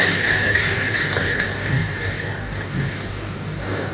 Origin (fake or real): fake